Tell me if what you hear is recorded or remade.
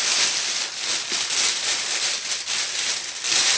remade